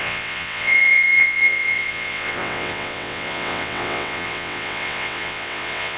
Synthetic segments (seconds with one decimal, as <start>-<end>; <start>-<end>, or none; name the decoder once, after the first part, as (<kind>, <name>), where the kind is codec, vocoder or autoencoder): 0.0-6.0 (vocoder, WaveNeXt)